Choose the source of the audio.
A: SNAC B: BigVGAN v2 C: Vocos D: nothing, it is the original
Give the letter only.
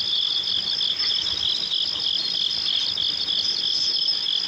D